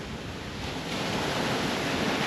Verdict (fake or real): real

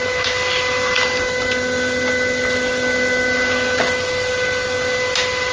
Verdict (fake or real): real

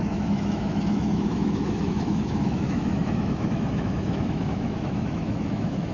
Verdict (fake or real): fake